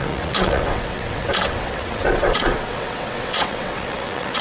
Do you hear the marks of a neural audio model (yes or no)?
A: yes